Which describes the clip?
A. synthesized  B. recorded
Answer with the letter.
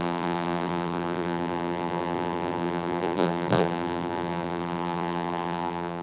A